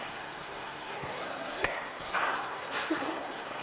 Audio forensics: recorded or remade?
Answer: remade